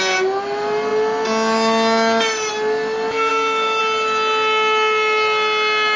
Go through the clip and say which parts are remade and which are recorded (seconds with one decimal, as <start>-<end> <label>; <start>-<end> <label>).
0.0-3.3 recorded; 3.3-3.8 remade; 3.8-6.0 recorded